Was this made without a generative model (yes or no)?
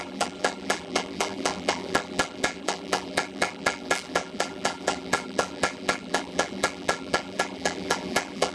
no